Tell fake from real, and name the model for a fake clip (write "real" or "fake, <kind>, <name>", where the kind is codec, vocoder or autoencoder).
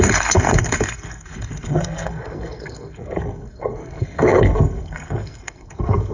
fake, codec, SNAC